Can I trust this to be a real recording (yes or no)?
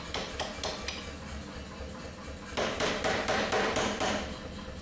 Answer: no